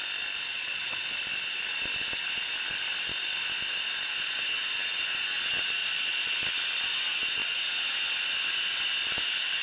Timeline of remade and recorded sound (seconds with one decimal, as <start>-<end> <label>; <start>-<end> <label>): 0.0-0.5 recorded; 0.5-1.2 remade; 1.2-5.8 recorded; 5.8-6.3 remade; 6.3-9.6 recorded